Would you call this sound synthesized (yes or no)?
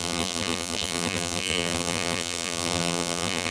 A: yes